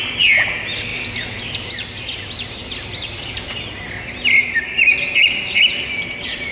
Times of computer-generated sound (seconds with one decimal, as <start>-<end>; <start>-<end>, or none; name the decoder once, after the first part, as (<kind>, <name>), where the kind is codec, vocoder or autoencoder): none